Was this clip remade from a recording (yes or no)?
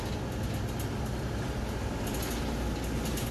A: no